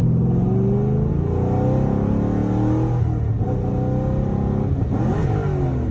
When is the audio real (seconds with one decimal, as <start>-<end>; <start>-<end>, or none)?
0.0-5.9